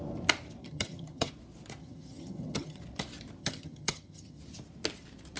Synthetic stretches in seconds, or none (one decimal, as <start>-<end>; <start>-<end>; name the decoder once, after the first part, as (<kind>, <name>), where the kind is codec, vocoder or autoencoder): 0.6-1.3 (vocoder, HiFi-GAN); 1.8-2.8; 3.4-4.4